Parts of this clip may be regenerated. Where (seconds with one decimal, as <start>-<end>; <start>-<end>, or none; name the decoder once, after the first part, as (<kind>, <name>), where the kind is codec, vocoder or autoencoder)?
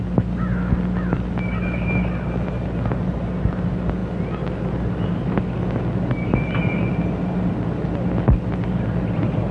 none